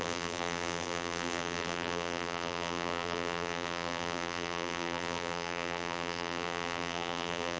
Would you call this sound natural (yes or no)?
no